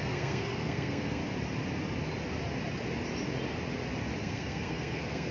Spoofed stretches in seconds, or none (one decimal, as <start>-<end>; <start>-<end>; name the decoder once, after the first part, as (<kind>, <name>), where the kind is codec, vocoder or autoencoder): 0.0-1.2 (codec, SNAC); 4.2-5.3

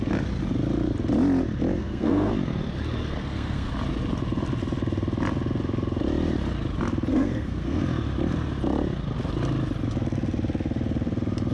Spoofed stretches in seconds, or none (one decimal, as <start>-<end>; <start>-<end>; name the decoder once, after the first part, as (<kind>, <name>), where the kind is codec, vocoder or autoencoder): 1.8-2.3 (codec, SNAC); 3.2-3.7; 7.1-7.8

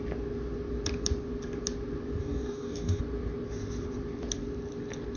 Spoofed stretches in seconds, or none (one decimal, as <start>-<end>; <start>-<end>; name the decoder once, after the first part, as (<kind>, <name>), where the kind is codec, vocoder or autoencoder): 2.2-3.0 (codec, DAC)

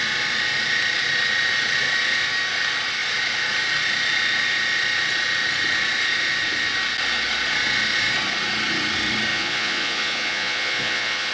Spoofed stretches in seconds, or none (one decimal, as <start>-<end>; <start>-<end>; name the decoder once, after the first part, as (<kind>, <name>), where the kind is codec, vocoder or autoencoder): 9.3-11.3 (vocoder, Vocos)

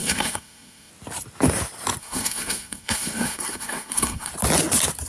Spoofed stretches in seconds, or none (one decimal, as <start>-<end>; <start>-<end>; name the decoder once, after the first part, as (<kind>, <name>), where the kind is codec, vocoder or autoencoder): 0.0-0.9 (codec, SNAC); 2.0-4.3

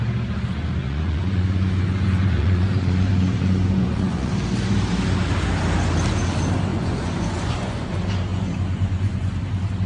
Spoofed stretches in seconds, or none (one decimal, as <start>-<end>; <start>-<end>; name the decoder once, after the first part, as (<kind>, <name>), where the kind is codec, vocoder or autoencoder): 0.8-4.3 (vocoder, Vocos); 6.7-7.9; 8.3-9.4

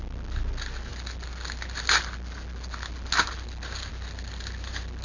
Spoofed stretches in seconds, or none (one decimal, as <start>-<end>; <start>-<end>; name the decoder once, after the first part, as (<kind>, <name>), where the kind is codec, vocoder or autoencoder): none